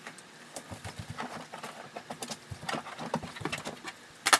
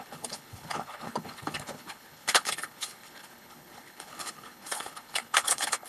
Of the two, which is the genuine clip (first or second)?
first